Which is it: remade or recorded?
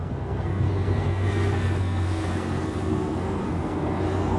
remade